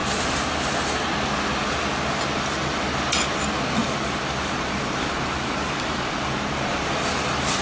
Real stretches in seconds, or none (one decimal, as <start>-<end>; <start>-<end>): 0.0-3.8; 7.1-7.6